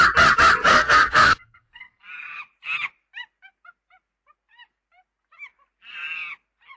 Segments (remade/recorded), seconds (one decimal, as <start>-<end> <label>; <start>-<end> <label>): 0.0-0.7 recorded; 0.7-2.0 remade; 2.0-6.8 recorded